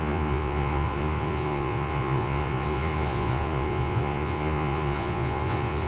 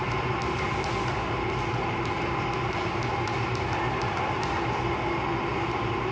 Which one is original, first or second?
second